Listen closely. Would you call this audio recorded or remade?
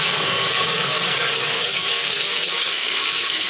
remade